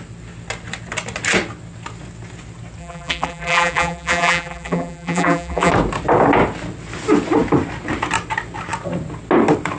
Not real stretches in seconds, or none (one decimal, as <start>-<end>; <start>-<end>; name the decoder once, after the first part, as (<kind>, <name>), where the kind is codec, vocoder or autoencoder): 2.8-5.7 (vocoder, BigVGAN v2)